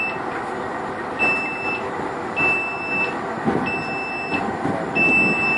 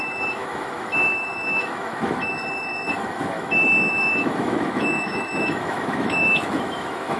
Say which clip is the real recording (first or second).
first